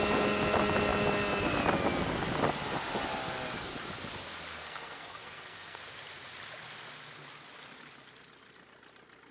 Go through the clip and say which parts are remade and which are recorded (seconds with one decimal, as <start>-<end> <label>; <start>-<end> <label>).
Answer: 0.0-4.5 recorded; 4.5-5.8 remade; 5.8-9.3 recorded